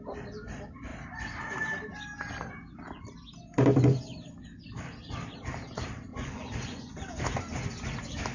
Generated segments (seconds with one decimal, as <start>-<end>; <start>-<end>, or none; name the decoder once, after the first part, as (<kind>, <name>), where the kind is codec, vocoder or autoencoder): 6.1-7.0 (vocoder, Vocos)